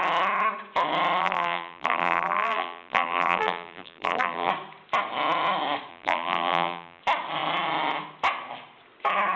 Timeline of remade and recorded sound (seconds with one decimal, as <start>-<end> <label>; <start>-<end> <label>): 0.0-1.2 recorded; 1.2-4.5 remade; 4.5-5.9 recorded; 5.9-7.0 remade; 7.0-9.4 recorded